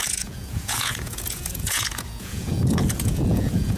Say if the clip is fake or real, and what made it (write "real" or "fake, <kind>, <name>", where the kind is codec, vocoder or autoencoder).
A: fake, vocoder, Vocos